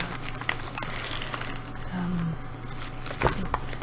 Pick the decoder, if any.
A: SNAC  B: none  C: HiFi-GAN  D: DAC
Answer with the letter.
B